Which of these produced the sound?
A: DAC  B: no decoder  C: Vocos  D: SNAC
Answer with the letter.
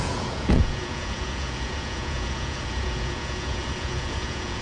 C